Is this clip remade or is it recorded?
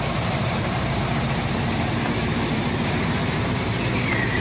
remade